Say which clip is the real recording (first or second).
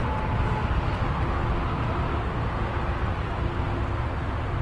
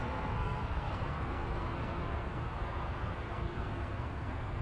first